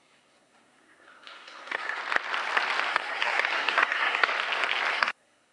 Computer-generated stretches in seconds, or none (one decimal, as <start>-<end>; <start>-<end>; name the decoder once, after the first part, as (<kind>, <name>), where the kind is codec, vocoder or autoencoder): 0.0-2.0 (codec, SNAC); 2.9-4.3; 4.9-5.5